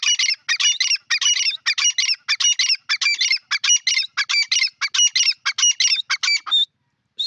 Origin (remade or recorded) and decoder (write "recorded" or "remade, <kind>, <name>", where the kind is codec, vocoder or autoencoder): recorded